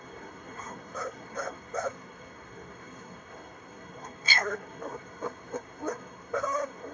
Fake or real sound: fake